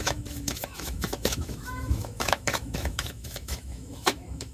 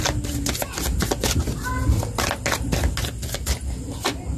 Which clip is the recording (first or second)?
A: second